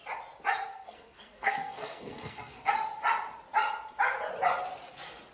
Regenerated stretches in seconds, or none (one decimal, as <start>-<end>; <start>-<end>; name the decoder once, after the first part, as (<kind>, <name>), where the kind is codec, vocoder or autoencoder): 0.7-2.7 (codec, SNAC)

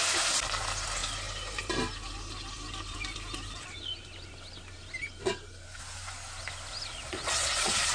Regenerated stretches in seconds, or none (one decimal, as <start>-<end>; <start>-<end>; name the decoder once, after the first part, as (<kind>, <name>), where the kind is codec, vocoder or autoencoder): 6.9-7.9 (vocoder, Vocos)

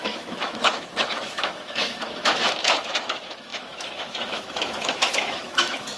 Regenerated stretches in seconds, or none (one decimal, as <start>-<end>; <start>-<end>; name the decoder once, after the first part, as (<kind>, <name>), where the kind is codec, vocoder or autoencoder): 0.0-6.0 (autoencoder, DAC-VAE)